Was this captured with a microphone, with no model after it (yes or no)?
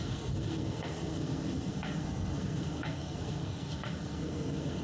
no